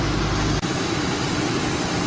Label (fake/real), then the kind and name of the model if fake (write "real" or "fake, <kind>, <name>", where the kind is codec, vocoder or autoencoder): real